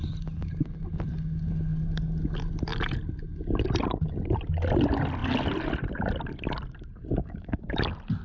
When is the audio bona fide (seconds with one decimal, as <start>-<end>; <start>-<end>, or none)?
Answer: 0.0-7.2; 7.7-8.2